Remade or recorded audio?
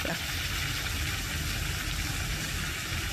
recorded